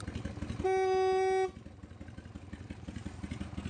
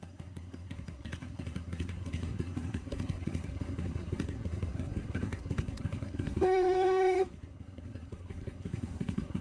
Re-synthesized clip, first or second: second